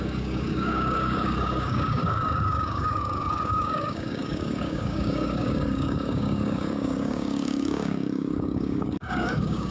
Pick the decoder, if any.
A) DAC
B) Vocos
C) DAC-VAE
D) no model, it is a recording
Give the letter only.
A